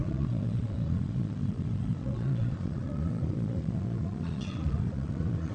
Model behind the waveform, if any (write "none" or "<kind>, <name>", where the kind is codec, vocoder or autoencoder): vocoder, Vocos